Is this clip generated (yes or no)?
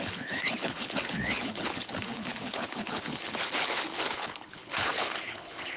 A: yes